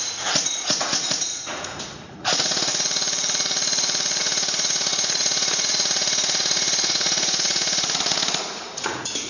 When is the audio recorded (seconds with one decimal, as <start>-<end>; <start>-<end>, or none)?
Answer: 2.7-4.2